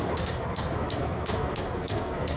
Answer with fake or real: fake